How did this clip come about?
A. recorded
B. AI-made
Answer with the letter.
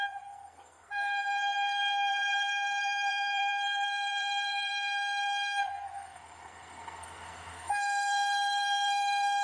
B